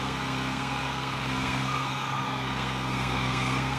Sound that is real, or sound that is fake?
fake